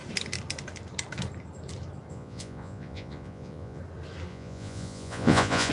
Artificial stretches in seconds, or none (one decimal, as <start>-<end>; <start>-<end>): 2.1-3.8; 4.3-5.7